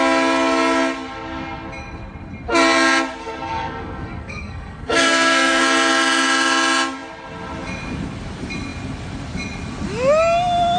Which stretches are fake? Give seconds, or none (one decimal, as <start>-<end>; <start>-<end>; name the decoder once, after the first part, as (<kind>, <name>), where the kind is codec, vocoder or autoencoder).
3.2-5.6 (codec, SNAC)